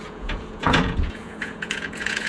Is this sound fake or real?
fake